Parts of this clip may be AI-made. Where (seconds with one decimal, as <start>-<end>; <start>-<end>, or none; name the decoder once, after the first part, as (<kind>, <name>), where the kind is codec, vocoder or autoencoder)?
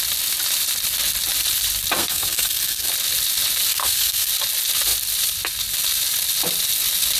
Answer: 2.0-2.9 (codec, SNAC); 3.7-4.3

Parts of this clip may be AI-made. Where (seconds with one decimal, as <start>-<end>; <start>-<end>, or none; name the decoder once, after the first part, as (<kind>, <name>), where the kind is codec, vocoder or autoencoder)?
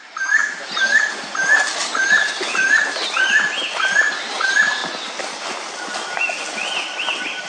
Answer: none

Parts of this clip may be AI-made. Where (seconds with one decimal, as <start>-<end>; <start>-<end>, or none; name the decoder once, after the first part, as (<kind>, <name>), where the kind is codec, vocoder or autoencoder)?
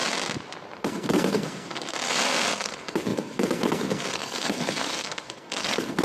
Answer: 0.8-6.0 (codec, SNAC)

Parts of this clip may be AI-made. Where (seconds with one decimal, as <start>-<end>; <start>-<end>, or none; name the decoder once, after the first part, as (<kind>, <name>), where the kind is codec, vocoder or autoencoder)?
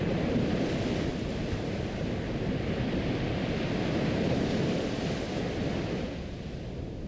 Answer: none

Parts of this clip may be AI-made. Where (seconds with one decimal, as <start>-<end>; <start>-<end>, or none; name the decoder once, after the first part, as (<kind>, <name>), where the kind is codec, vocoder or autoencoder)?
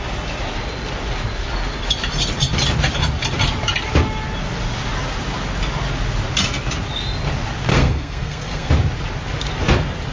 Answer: 7.7-8.7 (codec, SNAC)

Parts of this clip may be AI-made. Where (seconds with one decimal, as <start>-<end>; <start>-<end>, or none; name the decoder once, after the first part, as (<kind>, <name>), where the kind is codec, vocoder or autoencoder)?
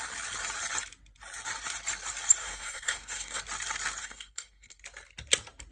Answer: 2.4-3.4 (codec, SNAC); 4.0-4.8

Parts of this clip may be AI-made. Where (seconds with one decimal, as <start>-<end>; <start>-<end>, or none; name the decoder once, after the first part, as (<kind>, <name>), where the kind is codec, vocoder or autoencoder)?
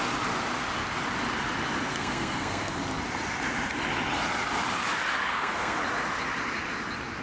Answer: 1.9-2.8 (codec, SNAC); 5.3-5.8